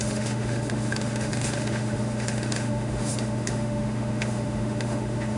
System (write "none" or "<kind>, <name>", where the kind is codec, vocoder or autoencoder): autoencoder, DAC-VAE